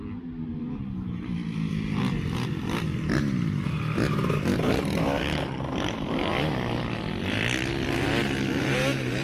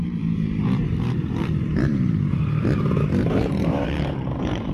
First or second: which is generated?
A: second